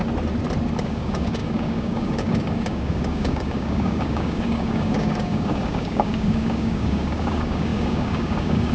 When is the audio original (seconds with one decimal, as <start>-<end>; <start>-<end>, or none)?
0.0-0.8